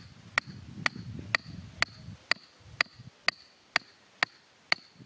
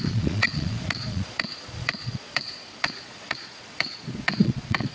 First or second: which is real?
first